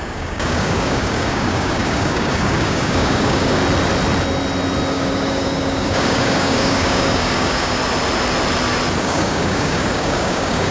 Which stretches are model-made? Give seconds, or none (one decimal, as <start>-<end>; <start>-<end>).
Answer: 0.0-3.6; 4.9-7.8; 9.0-10.7